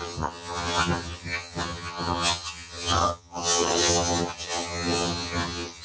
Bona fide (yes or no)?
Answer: no